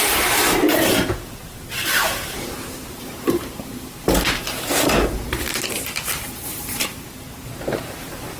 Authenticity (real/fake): fake